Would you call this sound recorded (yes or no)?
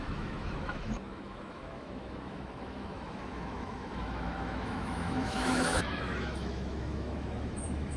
no